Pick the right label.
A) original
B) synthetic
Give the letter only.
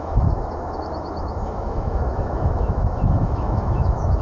B